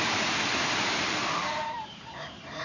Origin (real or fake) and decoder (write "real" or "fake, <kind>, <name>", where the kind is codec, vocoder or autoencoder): fake, vocoder, BigVGAN v2